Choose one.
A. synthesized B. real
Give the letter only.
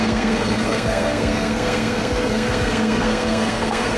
A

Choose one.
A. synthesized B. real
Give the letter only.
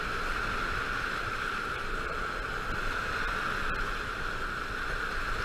B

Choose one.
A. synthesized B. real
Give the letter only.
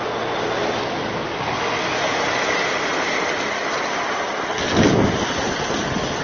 B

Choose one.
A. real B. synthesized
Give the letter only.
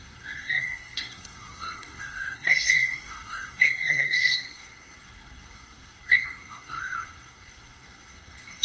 B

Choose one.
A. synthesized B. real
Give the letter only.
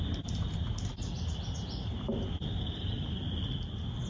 B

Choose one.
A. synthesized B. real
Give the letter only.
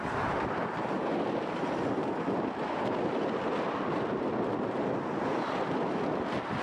B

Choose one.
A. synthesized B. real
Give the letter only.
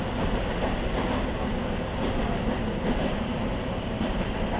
B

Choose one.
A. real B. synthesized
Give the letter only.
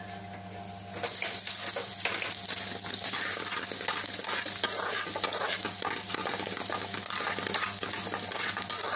A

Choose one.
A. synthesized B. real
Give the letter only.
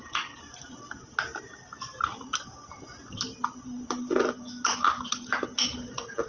B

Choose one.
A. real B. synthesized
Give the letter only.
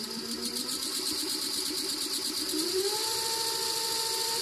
A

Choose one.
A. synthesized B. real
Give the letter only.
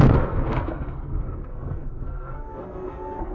A